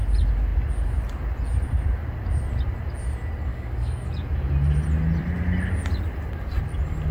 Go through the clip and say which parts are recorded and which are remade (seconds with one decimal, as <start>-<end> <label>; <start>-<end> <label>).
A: 0.0-3.5 recorded; 3.5-4.1 remade; 4.1-7.1 recorded